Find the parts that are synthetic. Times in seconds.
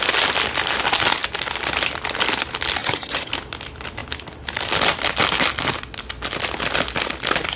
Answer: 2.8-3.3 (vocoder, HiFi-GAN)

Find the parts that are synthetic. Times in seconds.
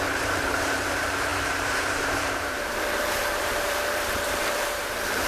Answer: 0.0-5.3 (vocoder, BigVGAN v2)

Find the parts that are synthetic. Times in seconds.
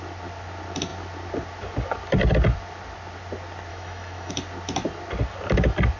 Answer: 3.7-4.3 (autoencoder, DAC-VAE)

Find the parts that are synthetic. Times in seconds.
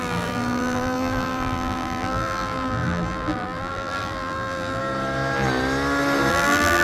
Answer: 0.0-4.8 (vocoder, BigVGAN v2); 6.3-6.8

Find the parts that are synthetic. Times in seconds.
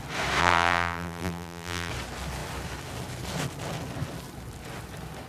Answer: 0.4-1.9 (vocoder, BigVGAN v2)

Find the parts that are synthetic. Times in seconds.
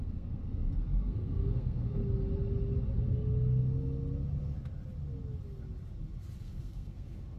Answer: 0.0-2.0 (codec, SNAC); 6.4-7.4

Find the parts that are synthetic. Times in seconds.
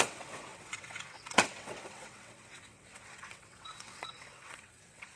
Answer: 0.0-5.2 (vocoder, WaveNeXt)